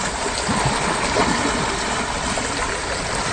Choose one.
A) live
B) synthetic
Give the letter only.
A